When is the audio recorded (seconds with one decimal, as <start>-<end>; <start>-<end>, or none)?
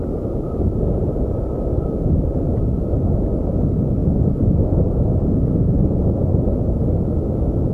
0.0-4.0; 4.8-7.7